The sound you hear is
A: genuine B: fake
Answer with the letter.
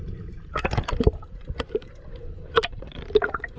B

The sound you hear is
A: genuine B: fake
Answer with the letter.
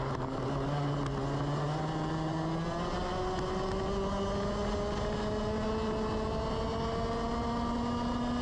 A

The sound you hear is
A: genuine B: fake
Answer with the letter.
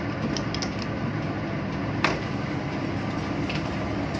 A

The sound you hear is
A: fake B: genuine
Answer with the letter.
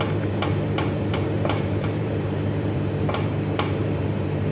A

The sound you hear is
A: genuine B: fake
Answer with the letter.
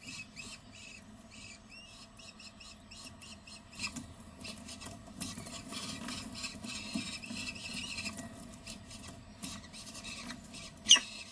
A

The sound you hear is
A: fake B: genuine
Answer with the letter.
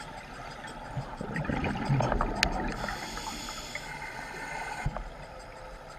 B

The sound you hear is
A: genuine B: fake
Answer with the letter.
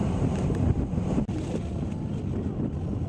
A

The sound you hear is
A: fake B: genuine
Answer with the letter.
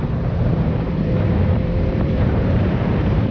A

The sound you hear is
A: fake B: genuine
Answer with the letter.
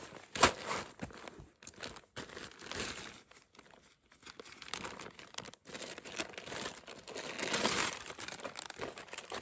B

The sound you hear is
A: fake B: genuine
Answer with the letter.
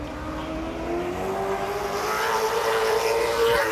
B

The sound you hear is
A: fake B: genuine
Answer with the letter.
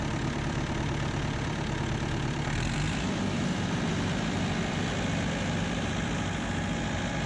A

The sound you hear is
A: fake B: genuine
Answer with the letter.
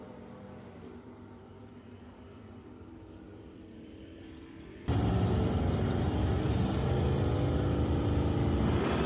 A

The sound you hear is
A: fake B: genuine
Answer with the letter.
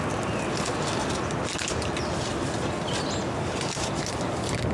B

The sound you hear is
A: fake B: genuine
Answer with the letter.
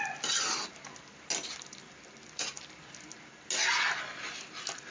B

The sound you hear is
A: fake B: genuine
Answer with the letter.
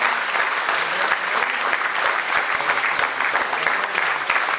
B